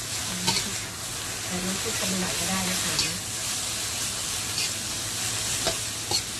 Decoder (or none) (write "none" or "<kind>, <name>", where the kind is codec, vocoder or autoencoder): none